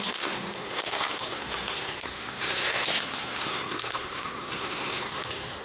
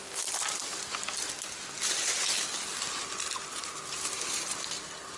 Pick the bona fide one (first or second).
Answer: second